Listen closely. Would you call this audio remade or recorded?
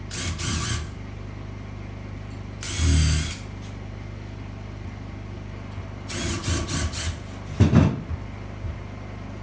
recorded